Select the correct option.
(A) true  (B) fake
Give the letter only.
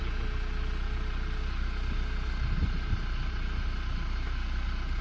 A